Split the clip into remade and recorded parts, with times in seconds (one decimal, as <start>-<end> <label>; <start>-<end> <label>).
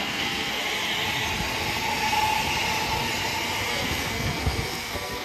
0.0-0.6 remade; 0.6-3.7 recorded; 3.7-5.2 remade